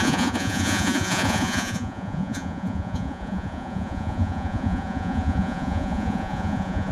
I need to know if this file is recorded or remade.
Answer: remade